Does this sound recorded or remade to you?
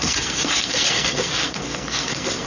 remade